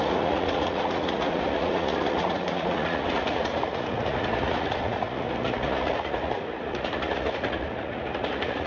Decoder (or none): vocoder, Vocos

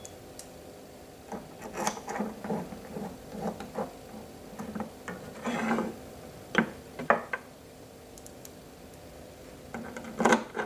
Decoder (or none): none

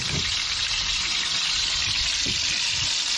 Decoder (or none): none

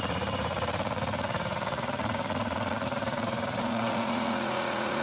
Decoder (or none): vocoder, Vocos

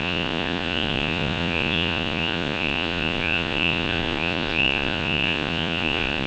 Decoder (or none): vocoder, Vocos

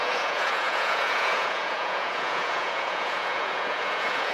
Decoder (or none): vocoder, Vocos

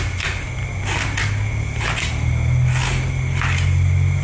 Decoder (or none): none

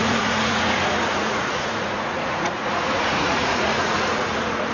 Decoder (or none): vocoder, Vocos